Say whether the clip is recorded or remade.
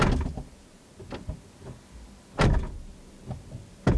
recorded